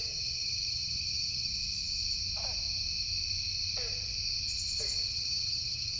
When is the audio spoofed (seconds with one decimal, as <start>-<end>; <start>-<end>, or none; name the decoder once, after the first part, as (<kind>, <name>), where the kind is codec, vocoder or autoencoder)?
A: 0.0-1.5 (vocoder, HiFi-GAN); 5.1-6.0